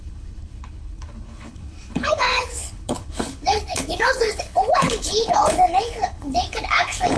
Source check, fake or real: fake